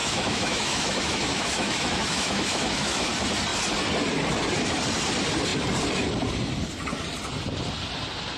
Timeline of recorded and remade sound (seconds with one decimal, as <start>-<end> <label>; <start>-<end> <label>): 0.0-3.1 remade; 3.1-8.4 recorded